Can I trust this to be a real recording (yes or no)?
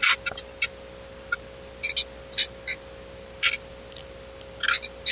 yes